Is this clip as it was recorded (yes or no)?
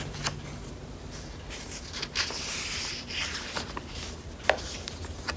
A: yes